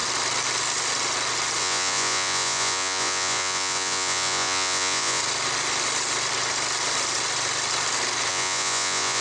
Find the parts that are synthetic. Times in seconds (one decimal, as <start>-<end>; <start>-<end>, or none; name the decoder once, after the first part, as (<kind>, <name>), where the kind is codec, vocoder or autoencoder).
1.6-5.2 (vocoder, Vocos); 8.3-9.2